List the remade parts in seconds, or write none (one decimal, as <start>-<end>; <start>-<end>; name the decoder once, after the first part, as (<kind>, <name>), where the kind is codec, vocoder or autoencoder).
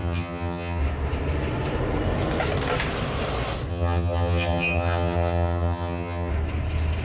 0.0-0.8 (vocoder, HiFi-GAN); 3.7-6.3